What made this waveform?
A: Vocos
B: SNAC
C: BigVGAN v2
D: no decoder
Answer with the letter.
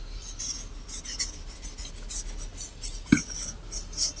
D